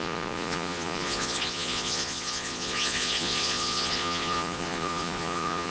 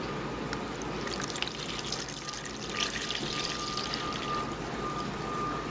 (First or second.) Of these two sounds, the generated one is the first